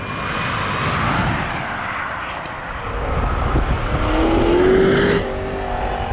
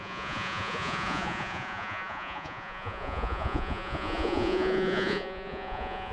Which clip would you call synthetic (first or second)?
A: second